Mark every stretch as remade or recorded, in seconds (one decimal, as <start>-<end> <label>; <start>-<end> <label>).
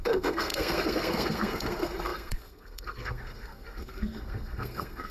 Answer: 0.0-5.1 remade